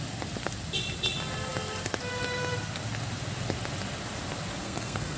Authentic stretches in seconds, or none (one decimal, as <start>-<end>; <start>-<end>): 0.0-4.6